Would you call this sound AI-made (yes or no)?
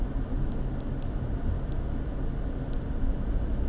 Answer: no